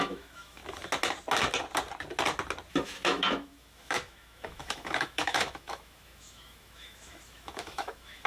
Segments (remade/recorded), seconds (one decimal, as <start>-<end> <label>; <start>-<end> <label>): 0.0-0.6 remade; 0.6-2.7 recorded; 2.7-8.3 remade